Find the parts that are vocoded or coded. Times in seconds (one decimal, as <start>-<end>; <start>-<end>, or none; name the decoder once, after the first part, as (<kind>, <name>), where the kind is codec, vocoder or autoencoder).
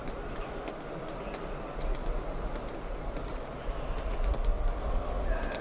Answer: none